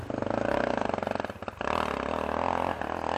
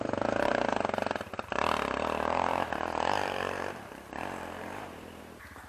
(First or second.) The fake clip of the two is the second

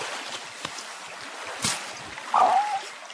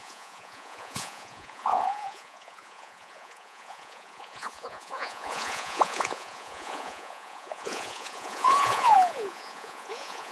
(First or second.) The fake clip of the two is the second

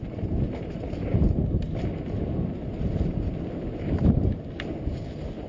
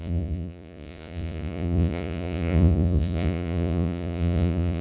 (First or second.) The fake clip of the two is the second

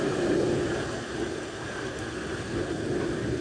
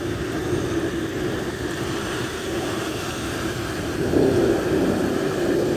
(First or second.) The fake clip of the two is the second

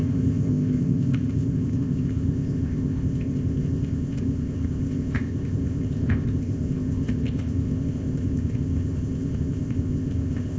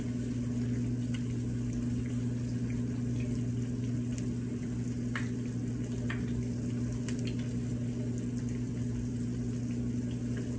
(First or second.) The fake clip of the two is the first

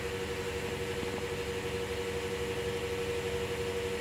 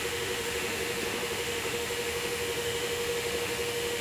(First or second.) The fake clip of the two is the second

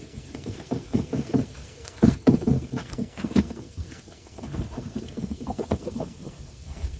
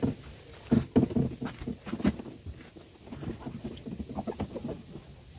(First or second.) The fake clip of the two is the first